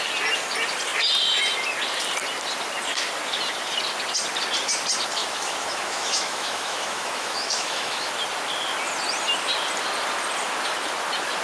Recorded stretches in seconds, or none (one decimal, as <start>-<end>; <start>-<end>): 0.0-5.2; 8.1-11.4